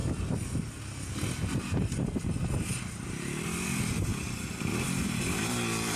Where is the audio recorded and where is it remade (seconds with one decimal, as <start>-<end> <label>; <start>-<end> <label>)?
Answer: 0.0-1.5 recorded; 1.5-4.1 remade; 4.1-4.7 recorded; 4.7-6.0 remade